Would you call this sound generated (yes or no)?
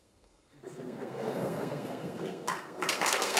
yes